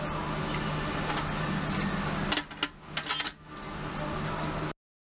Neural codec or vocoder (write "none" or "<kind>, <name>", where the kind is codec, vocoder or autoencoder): none